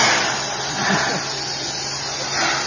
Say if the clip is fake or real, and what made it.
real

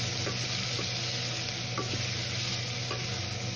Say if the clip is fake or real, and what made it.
real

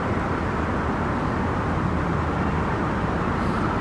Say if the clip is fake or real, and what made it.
real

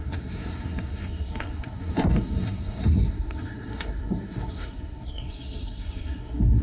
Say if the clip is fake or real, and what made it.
fake, codec, SNAC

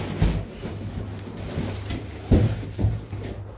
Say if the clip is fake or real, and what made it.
real